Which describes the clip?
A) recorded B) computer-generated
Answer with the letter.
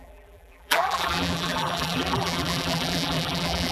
B